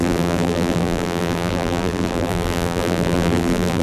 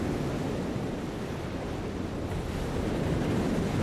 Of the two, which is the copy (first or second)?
first